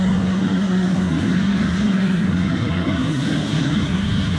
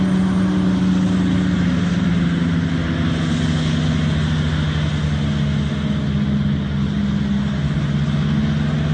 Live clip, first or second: second